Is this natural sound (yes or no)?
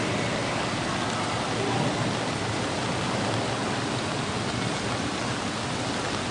yes